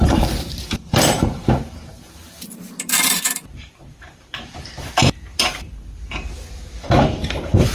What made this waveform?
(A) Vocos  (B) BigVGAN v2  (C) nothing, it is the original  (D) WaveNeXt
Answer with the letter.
B